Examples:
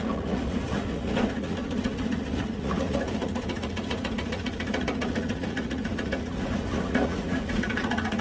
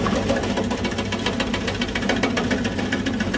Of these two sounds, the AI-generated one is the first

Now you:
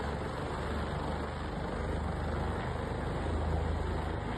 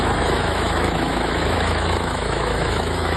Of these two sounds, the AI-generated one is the second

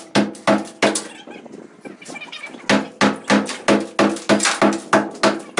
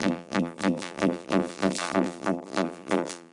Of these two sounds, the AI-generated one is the second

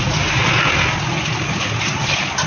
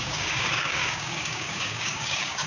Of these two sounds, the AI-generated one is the second